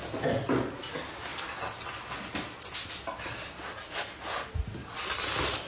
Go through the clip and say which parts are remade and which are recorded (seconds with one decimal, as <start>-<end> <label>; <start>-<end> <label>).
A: 0.0-5.7 recorded